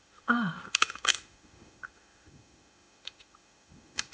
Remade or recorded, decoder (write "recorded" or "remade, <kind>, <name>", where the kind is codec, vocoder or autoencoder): remade, autoencoder, DAC-VAE